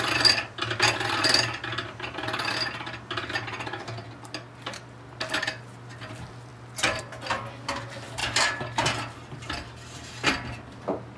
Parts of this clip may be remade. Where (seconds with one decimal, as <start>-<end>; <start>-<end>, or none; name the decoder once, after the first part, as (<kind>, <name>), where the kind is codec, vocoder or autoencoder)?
none